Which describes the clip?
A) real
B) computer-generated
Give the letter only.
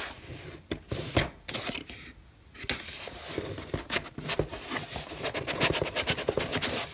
A